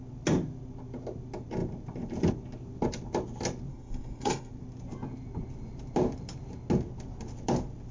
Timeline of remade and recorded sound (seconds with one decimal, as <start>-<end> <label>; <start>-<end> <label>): 0.0-3.7 recorded; 3.7-4.5 remade; 4.5-7.9 recorded